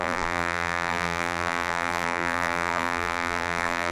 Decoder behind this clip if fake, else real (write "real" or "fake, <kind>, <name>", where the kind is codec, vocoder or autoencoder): fake, vocoder, BigVGAN v2